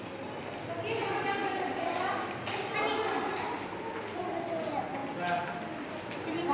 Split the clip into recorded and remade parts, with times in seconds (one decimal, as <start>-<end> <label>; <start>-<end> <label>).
0.0-6.5 recorded